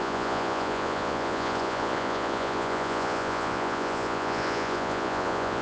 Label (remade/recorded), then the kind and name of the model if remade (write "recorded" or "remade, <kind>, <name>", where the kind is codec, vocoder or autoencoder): remade, vocoder, Vocos